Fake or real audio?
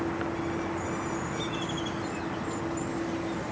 real